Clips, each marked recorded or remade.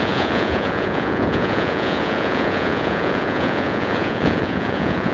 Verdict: remade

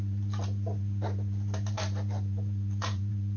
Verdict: remade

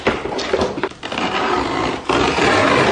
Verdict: recorded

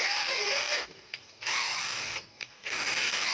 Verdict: remade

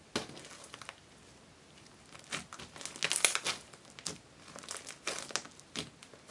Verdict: recorded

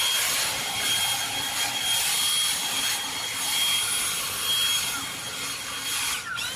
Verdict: recorded